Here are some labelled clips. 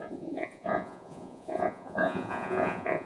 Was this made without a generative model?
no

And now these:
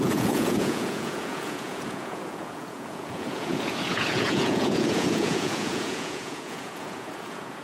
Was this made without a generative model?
no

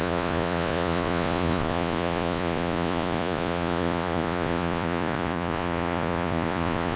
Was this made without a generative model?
no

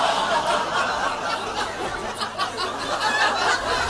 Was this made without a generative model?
yes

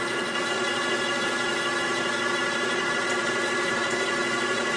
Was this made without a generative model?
no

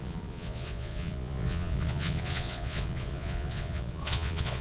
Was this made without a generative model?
no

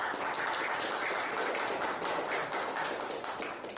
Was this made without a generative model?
yes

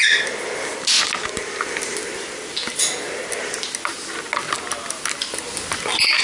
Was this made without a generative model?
yes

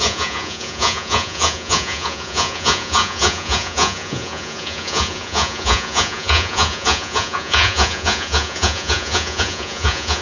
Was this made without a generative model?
no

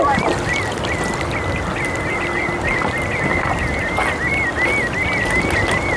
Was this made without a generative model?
yes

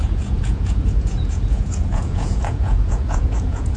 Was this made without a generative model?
no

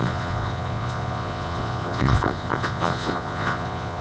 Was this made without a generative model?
no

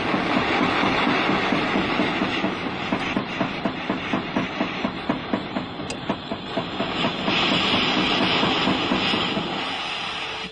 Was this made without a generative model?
yes